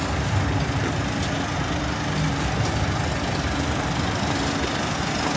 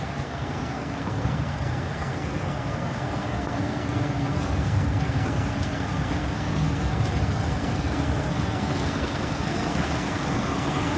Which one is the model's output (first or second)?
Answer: second